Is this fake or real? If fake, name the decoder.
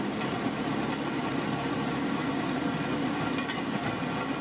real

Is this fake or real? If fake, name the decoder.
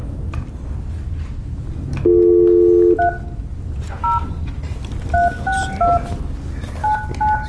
real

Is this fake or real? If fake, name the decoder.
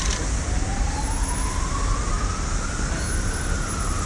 real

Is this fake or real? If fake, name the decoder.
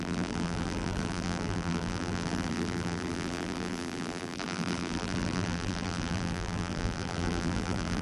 fake, vocoder, BigVGAN v2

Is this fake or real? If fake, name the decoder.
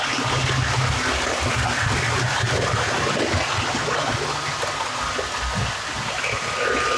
real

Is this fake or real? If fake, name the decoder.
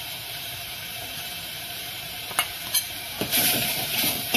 fake, vocoder, BigVGAN v2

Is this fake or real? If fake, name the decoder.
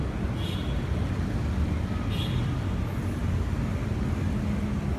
real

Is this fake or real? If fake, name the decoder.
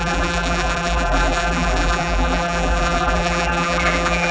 fake, vocoder, BigVGAN v2